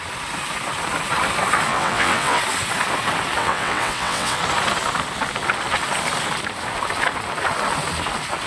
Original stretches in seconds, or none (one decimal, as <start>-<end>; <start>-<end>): 0.0-1.7; 2.4-3.4; 4.4-8.5